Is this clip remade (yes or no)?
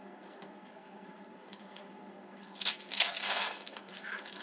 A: yes